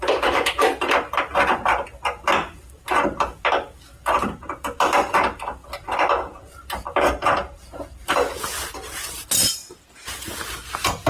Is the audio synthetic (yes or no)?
no